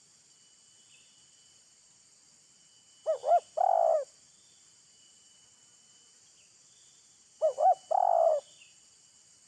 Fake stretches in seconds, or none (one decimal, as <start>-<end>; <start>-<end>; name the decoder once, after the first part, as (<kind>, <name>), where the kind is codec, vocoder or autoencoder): none